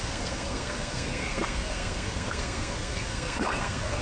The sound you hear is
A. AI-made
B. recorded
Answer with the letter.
A